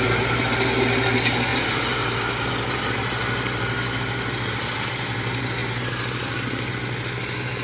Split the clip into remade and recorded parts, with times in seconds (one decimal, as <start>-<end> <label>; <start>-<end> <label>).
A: 0.0-1.5 recorded; 1.5-2.5 remade; 2.5-7.6 recorded